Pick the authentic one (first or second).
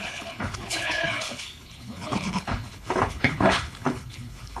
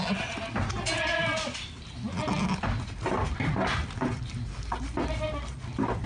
second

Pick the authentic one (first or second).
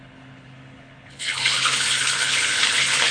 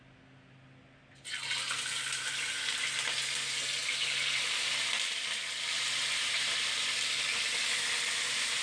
second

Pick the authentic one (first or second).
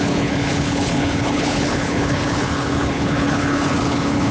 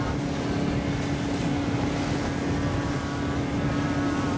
second